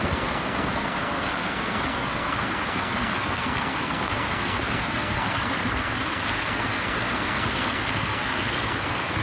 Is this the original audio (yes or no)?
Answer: no